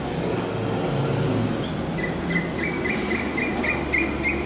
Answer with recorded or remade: recorded